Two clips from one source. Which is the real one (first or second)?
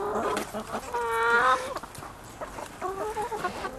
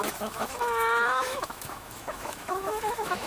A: first